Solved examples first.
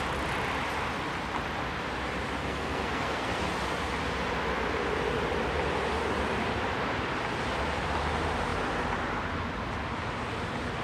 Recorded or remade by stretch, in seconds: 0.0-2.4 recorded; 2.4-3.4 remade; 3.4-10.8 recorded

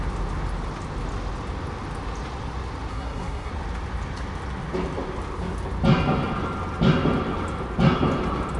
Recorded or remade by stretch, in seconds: 0.0-2.9 recorded; 2.9-3.5 remade; 3.5-8.6 recorded

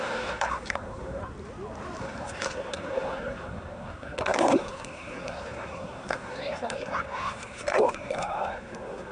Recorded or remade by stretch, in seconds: 0.0-1.2 remade; 1.2-2.0 recorded; 2.0-9.1 remade